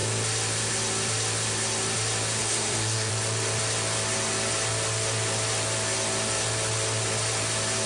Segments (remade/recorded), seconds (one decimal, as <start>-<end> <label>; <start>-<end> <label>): 0.0-2.4 recorded; 2.4-3.1 remade; 3.1-7.9 recorded